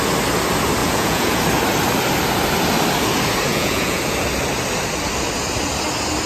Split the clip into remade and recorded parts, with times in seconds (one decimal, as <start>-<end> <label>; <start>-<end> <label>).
0.0-0.8 recorded; 0.8-1.4 remade; 1.4-3.5 recorded; 3.5-4.0 remade; 4.0-6.3 recorded